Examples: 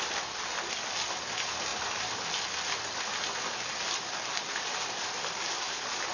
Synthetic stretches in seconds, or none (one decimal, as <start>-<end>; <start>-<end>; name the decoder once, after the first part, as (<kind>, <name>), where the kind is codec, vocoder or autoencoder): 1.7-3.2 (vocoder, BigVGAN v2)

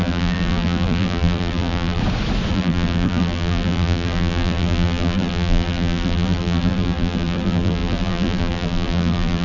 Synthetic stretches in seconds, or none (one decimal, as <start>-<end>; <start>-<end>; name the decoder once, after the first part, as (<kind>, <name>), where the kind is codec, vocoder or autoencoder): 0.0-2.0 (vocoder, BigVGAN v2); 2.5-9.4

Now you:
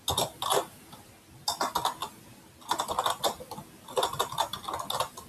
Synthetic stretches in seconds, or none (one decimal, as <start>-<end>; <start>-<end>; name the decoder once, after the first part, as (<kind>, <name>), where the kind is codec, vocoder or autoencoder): 0.5-1.0 (vocoder, BigVGAN v2)

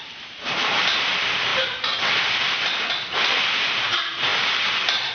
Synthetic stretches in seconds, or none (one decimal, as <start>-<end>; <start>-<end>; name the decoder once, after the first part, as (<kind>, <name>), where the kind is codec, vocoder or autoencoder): 0.0-1.5 (vocoder, BigVGAN v2); 3.1-5.1

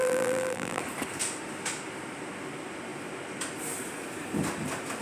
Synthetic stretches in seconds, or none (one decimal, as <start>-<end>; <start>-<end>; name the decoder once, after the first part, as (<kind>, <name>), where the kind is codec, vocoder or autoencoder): 0.0-0.8 (vocoder, BigVGAN v2)